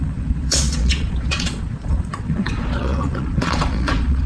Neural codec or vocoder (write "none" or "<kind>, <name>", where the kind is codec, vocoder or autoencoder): vocoder, Vocos